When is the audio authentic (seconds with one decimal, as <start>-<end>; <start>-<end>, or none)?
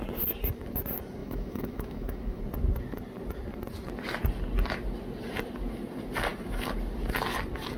0.0-1.2; 2.4-7.8